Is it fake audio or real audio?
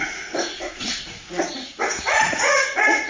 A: fake